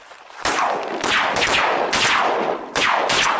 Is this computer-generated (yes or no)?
no